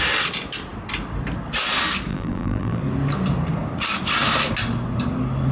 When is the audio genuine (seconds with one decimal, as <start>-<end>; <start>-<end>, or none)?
0.0-2.1; 2.8-5.5

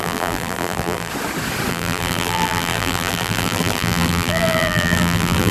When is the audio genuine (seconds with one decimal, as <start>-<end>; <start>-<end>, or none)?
1.1-1.7

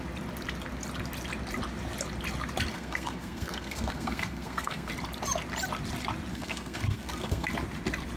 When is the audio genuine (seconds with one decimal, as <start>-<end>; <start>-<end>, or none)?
0.0-2.7; 4.9-6.3; 7.5-8.2

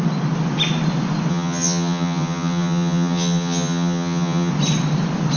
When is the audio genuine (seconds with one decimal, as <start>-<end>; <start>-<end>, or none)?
0.0-1.3; 4.5-5.4

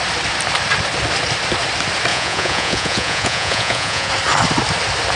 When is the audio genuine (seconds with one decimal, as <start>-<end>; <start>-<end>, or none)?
0.0-2.1; 4.1-5.2

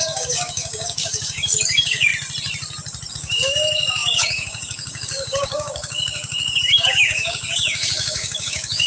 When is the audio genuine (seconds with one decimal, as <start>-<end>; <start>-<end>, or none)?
2.1-3.1